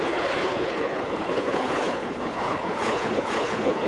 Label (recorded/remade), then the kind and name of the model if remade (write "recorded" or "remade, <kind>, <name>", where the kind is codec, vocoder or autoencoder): remade, codec, HILCodec